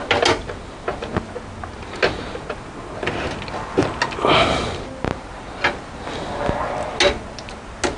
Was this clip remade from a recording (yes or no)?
no